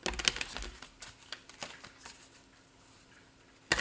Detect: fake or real real